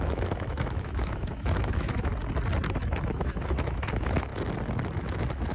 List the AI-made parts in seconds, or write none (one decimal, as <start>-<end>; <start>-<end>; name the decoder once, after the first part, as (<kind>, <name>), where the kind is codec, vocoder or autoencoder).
0.0-2.1 (autoencoder, DAC-VAE); 3.1-4.3; 5.0-5.5